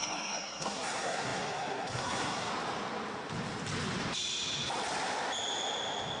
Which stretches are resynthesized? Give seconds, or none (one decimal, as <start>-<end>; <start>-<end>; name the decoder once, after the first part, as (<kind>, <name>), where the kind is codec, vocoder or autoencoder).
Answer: 0.0-2.5 (codec, SNAC)